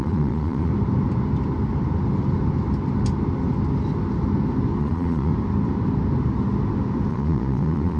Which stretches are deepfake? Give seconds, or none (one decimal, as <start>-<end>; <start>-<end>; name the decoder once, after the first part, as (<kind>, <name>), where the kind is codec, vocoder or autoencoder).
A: 0.0-0.7 (vocoder, Vocos); 4.8-5.3; 7.1-8.0